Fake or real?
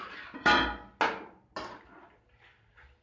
real